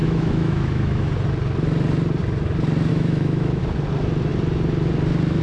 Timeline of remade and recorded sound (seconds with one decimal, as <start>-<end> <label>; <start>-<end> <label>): 0.0-1.1 remade; 1.1-2.9 recorded; 2.9-3.6 remade; 3.6-5.4 recorded